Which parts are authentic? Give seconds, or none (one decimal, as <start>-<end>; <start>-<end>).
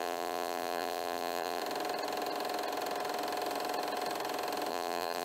1.6-4.7